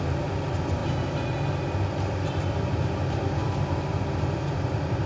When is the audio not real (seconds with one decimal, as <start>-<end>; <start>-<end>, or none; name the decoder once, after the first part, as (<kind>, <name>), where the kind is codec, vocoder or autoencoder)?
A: none